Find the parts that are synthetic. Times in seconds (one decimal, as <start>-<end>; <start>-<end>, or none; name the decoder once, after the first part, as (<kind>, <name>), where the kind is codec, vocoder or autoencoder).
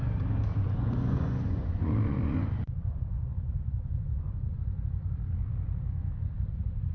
0.5-4.6 (vocoder, Vocos)